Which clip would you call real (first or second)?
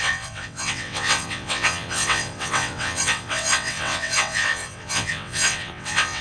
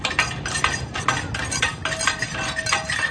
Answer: second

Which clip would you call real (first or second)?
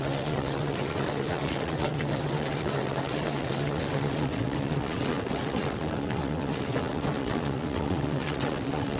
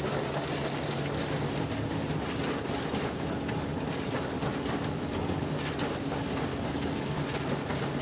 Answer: second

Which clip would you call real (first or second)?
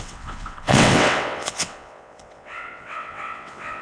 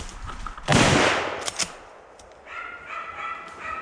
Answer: second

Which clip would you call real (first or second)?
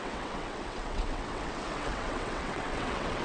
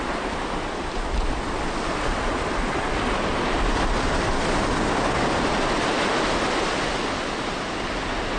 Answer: second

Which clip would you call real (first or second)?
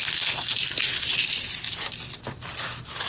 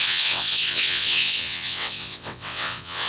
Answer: first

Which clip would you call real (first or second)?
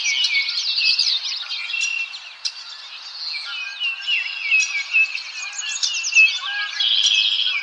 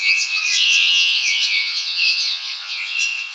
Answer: first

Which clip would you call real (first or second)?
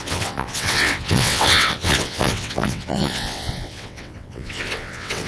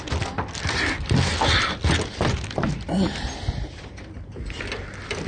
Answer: second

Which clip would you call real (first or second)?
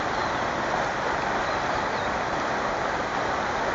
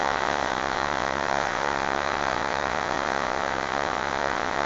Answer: first